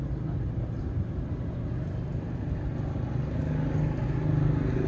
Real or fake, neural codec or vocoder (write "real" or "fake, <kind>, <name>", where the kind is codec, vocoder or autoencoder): real